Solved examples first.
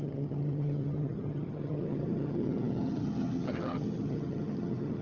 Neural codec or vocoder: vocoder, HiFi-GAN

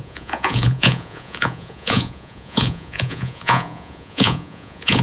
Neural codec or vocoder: vocoder, Vocos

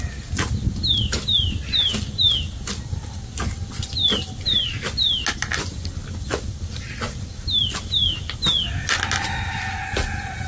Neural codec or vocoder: none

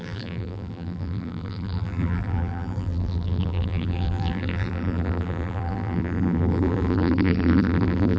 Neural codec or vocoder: vocoder, BigVGAN v2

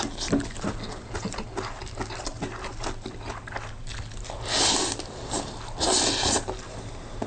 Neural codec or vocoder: none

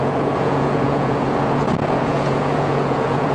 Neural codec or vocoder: vocoder, Vocos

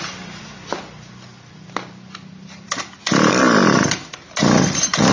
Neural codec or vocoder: none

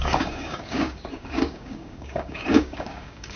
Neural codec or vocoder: codec, DAC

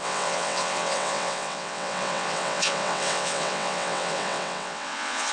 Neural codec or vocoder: vocoder, WaveNeXt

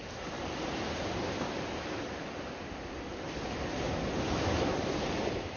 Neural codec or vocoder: none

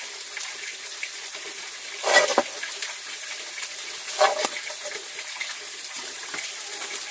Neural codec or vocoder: none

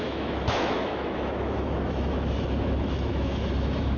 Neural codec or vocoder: autoencoder, DAC-VAE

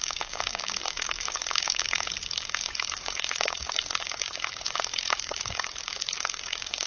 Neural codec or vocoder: codec, DAC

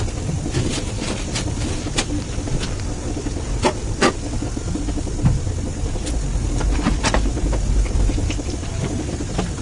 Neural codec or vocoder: vocoder, BigVGAN v2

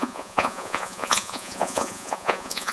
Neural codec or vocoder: vocoder, Vocos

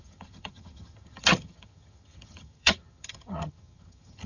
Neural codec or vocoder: vocoder, HiFi-GAN